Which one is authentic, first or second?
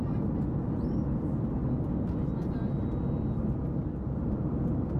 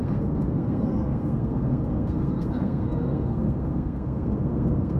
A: first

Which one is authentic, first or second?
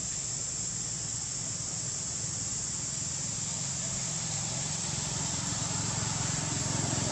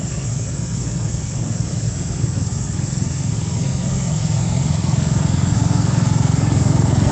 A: first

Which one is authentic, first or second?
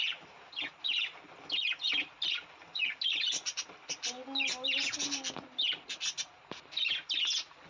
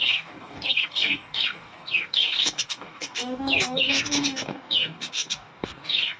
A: first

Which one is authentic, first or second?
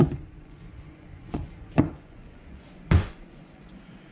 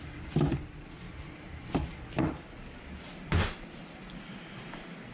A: second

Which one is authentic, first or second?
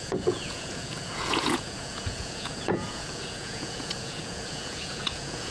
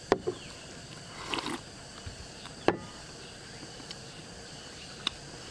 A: second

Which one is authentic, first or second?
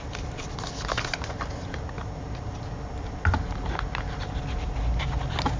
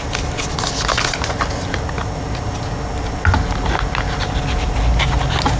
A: second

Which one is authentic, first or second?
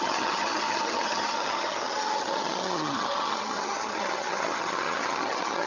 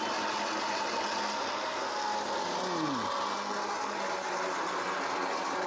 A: second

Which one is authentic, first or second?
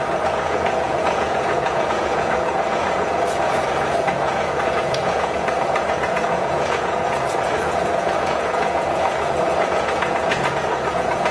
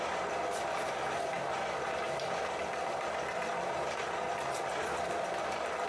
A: second